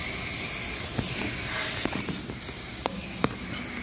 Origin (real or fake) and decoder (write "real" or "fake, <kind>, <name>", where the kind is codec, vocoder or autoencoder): real